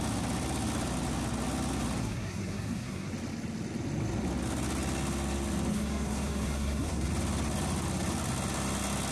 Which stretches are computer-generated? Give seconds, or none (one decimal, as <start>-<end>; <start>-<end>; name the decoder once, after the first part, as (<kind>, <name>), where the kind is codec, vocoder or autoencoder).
2.0-3.1 (codec, SNAC); 5.7-7.1